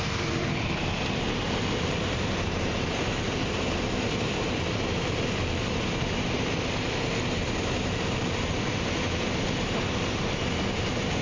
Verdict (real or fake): real